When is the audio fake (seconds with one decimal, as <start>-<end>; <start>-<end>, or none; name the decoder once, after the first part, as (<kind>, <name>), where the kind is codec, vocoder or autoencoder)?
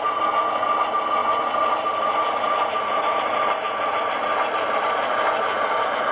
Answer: none